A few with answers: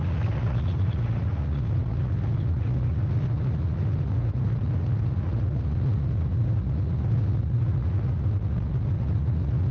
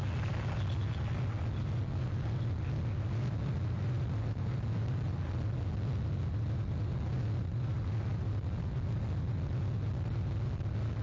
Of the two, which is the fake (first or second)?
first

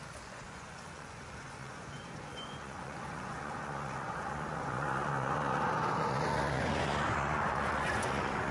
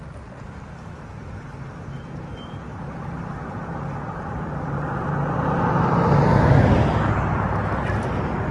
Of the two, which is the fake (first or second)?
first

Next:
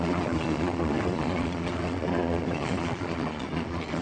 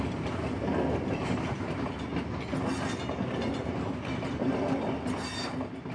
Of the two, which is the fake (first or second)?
first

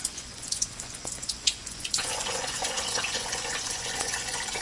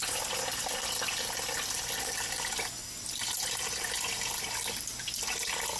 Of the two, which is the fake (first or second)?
first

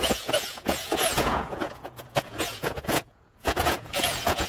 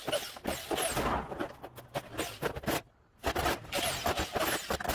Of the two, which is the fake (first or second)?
first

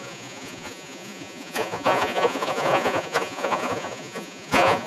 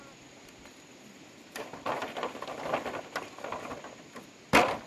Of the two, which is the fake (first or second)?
first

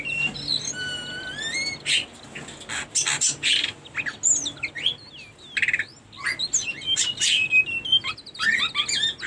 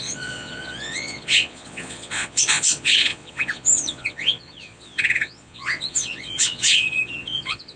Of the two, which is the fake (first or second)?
second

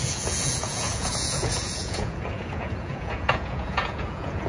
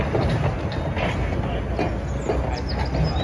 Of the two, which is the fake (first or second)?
first